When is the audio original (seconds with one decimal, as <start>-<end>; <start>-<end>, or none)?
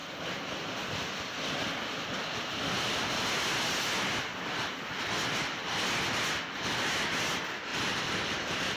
3.1-7.7